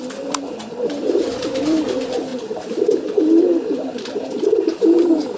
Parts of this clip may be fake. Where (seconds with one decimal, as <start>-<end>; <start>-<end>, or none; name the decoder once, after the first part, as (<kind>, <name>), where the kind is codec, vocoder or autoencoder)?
2.3-4.8 (vocoder, BigVGAN v2)